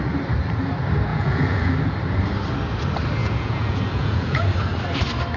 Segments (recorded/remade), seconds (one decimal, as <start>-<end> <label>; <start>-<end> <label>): 0.0-1.1 recorded; 1.1-1.7 remade; 1.7-3.2 recorded; 3.2-4.4 remade; 4.4-5.4 recorded